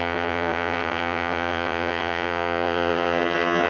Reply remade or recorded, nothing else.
remade